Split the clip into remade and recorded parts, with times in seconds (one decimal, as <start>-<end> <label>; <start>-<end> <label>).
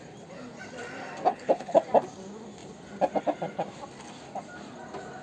0.0-1.3 recorded; 1.3-1.8 remade; 1.8-5.2 recorded